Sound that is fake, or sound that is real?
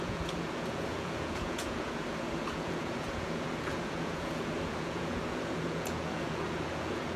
fake